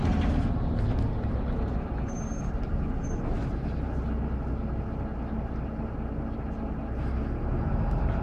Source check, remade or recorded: recorded